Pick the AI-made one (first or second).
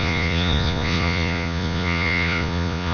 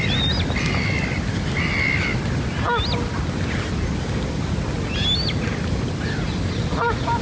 first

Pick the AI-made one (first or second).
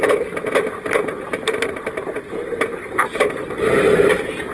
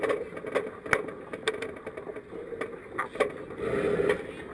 first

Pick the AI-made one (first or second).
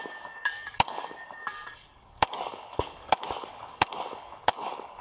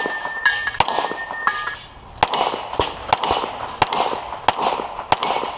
first